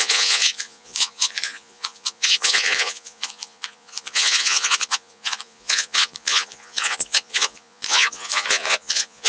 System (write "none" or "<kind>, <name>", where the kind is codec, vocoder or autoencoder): vocoder, Vocos